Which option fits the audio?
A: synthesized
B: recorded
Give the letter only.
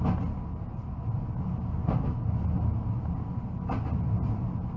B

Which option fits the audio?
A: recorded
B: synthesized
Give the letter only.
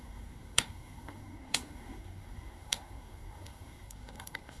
B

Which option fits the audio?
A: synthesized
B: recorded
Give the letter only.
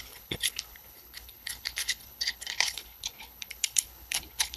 A